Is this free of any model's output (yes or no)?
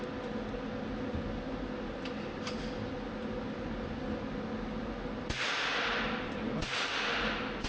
yes